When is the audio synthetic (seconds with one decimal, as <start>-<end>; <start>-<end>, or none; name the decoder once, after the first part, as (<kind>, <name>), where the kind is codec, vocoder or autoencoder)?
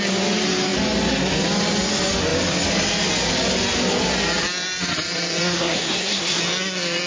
5.4-6.4 (codec, SNAC)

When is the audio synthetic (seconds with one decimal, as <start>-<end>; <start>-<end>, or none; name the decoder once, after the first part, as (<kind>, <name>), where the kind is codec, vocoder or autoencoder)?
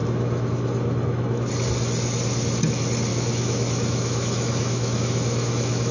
0.0-1.5 (autoencoder, DAC-VAE); 3.1-5.9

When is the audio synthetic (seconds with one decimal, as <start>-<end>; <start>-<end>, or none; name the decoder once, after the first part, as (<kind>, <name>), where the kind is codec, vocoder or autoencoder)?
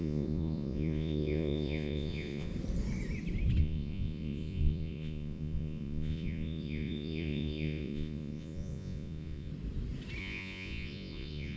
0.0-2.5 (vocoder, Vocos); 3.6-9.5; 10.2-11.6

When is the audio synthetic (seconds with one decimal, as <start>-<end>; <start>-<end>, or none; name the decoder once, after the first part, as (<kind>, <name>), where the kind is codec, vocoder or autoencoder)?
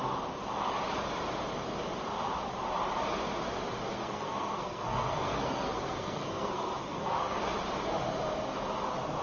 3.9-7.4 (codec, SNAC)